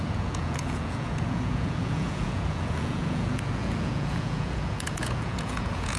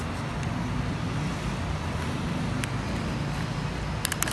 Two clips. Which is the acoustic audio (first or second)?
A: second